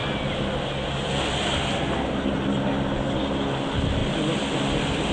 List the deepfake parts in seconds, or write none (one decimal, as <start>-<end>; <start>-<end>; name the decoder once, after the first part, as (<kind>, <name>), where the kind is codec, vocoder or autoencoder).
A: none